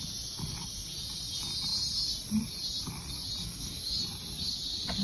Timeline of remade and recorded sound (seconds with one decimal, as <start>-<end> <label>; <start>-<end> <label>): 0.0-3.4 recorded; 3.4-4.0 remade; 4.0-5.0 recorded